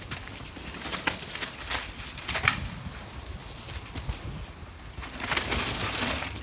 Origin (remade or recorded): recorded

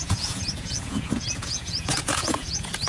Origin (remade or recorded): remade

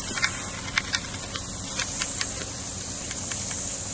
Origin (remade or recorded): recorded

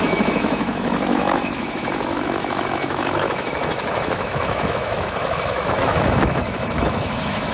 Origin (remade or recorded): remade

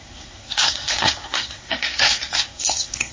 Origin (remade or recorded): remade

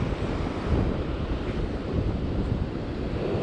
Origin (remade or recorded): recorded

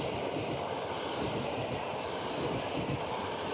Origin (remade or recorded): recorded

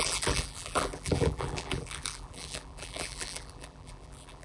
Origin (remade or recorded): remade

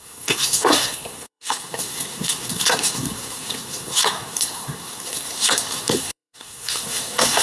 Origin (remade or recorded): remade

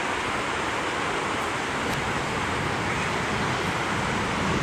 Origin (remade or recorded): recorded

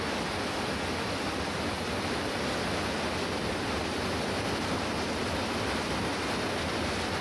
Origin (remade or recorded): recorded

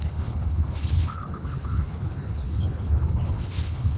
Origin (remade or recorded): remade